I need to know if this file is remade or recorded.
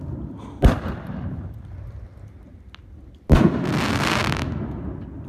recorded